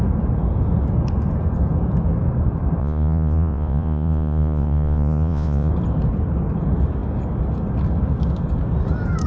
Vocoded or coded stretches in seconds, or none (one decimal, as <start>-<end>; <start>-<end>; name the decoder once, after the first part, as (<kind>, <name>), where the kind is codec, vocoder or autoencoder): 2.8-5.7 (vocoder, Vocos)